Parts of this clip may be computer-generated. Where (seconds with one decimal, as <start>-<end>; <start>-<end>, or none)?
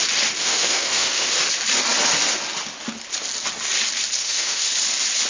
0.4-1.3; 4.2-4.7